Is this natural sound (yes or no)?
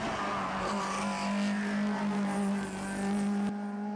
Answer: yes